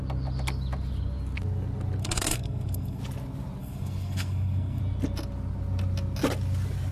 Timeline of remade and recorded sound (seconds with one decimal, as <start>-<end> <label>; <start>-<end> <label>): 0.0-2.0 recorded; 2.0-3.0 remade; 3.0-3.6 recorded; 3.6-4.8 remade; 4.8-6.9 recorded